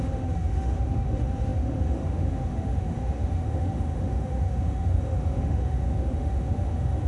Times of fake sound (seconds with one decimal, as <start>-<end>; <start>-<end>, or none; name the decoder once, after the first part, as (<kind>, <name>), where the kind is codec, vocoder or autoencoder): 0.0-7.1 (autoencoder, DAC-VAE)